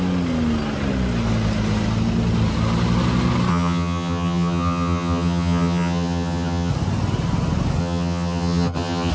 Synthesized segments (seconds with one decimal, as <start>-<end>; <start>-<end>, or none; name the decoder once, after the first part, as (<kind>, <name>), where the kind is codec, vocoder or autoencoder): 3.5-6.7 (vocoder, HiFi-GAN); 7.8-9.1